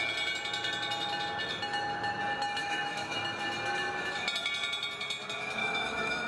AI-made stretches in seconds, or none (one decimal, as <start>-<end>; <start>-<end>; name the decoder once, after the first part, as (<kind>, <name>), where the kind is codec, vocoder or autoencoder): 2.6-3.2 (autoencoder, DAC-VAE); 5.6-6.3